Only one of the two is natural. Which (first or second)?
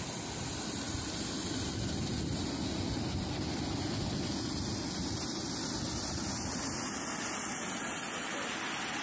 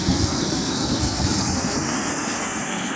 first